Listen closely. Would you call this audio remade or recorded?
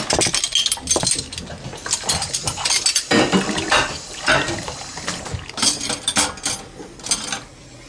recorded